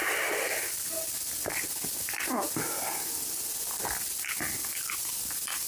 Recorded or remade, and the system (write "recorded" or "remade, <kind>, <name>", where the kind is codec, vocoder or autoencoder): recorded